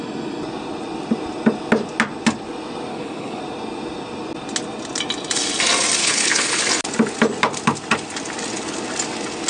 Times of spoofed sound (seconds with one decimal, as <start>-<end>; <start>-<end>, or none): 2.9-3.4; 6.0-6.6